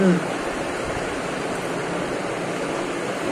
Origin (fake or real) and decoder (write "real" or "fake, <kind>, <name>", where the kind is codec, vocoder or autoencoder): real